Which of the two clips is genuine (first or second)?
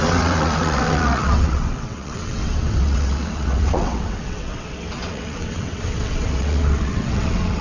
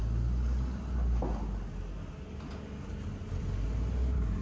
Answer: second